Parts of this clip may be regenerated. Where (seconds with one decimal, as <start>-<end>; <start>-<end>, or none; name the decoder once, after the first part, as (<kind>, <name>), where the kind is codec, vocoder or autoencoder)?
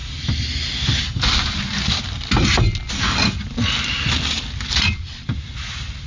none